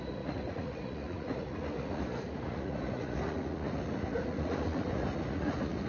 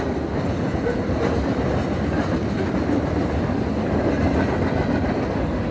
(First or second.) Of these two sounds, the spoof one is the first